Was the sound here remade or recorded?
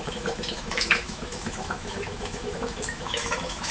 remade